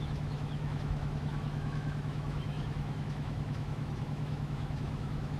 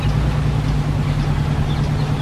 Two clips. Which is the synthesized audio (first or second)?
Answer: first